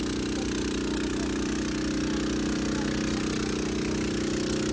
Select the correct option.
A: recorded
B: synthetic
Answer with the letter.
A